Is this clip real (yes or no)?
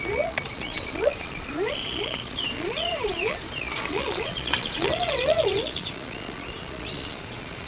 no